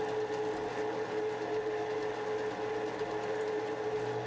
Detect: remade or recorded recorded